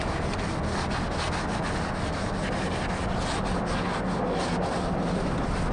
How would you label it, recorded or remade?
recorded